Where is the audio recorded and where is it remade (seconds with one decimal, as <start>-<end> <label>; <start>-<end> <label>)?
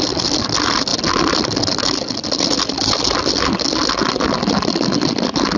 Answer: 0.0-5.6 recorded